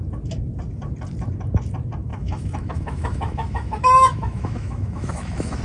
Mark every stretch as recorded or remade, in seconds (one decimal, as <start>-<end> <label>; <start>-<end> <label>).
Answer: 0.0-2.1 recorded; 2.1-5.6 remade